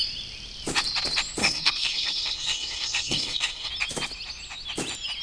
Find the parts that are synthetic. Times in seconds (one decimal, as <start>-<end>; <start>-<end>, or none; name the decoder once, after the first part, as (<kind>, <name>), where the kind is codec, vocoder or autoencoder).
1.4-3.7 (codec, SNAC)